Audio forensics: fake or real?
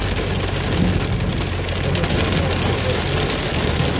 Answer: real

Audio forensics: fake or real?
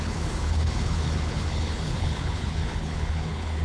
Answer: fake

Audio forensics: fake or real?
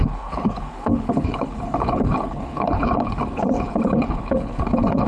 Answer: fake